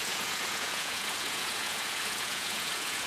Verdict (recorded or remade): remade